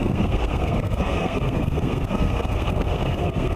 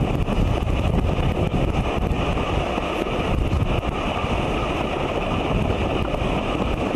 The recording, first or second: second